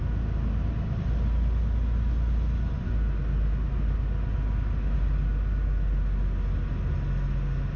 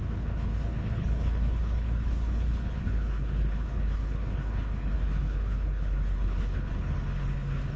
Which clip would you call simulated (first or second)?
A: second